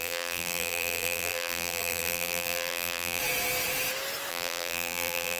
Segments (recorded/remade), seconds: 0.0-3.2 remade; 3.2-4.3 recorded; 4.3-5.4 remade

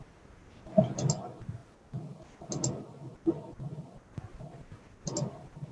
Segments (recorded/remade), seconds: 0.0-5.7 recorded

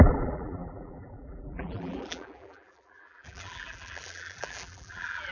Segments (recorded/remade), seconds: 0.0-5.3 remade